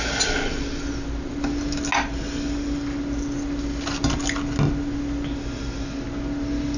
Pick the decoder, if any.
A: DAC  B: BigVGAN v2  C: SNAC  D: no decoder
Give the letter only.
D